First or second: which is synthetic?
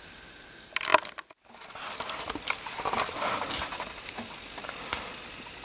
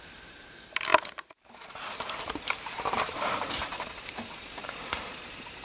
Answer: second